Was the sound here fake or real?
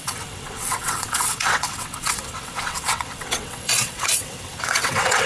fake